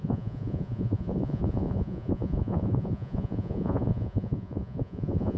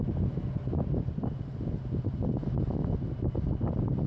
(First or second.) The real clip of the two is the second